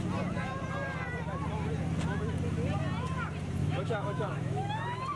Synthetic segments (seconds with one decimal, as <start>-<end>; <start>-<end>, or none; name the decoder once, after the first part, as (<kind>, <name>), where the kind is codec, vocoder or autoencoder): 3.6-5.2 (autoencoder, DAC-VAE)

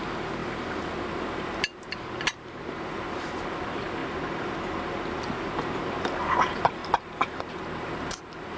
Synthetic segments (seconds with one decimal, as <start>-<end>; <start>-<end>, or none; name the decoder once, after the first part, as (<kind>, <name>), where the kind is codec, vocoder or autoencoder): none

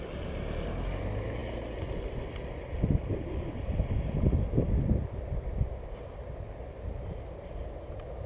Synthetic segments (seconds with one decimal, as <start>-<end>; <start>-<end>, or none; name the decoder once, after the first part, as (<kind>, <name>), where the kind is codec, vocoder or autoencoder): none